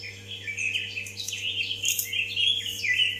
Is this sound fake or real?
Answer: real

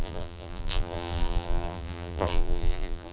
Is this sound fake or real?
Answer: fake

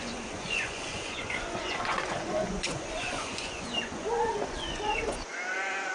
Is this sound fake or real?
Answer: fake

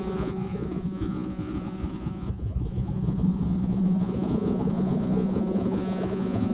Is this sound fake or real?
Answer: fake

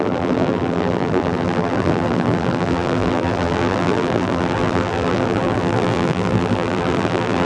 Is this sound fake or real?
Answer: fake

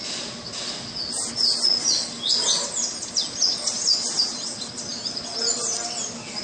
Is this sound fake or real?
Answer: real